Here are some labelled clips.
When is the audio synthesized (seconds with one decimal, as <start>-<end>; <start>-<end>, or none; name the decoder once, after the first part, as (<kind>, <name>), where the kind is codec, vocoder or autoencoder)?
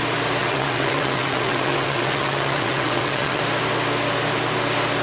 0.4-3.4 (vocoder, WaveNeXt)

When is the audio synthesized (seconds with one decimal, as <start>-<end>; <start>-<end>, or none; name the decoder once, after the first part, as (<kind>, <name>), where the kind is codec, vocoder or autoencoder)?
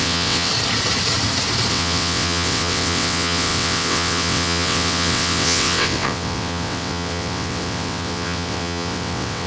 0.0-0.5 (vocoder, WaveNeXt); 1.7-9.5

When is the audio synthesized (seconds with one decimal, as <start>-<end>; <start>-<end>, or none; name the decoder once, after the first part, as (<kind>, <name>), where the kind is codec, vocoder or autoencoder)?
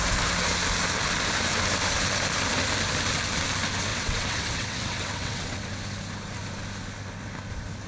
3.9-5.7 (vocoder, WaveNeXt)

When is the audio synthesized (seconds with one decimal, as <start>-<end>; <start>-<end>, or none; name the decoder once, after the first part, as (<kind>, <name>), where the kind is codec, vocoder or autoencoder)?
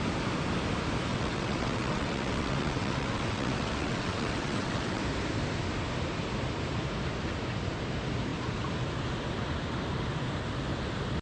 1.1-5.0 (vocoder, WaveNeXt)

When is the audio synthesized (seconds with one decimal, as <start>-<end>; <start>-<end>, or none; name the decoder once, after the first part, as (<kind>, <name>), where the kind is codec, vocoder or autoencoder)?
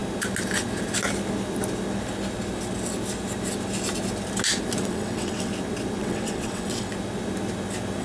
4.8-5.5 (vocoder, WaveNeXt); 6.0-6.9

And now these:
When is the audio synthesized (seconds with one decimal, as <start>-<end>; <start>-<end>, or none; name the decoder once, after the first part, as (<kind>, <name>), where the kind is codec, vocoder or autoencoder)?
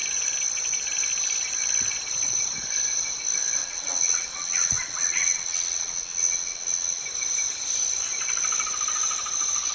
3.6-7.0 (vocoder, WaveNeXt)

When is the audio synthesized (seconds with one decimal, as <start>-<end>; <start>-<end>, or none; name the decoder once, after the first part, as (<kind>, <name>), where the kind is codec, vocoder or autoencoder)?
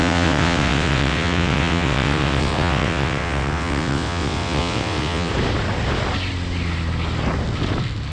0.0-5.3 (vocoder, WaveNeXt)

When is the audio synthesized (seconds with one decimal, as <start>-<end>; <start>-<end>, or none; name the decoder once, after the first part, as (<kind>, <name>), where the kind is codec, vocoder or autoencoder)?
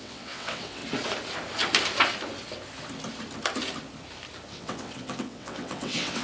0.0-0.8 (vocoder, WaveNeXt); 4.5-6.2